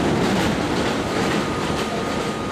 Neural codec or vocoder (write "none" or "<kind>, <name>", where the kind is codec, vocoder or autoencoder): none